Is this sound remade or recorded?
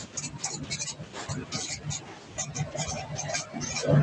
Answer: recorded